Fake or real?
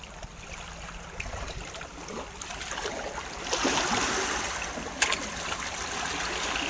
real